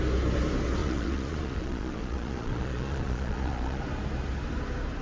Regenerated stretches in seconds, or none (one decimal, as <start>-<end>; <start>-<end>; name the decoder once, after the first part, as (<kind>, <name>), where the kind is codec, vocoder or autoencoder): 0.8-3.8 (vocoder, Vocos)